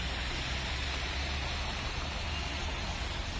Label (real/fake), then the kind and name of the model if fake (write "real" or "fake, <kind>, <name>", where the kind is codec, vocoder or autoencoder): real